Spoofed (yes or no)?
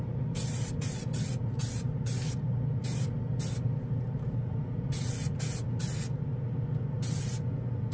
no